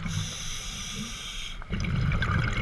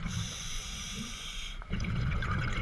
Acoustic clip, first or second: first